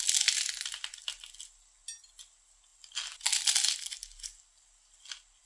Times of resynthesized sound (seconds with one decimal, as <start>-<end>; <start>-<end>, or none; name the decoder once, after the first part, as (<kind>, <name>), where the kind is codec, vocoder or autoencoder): 2.7-5.0 (vocoder, BigVGAN v2)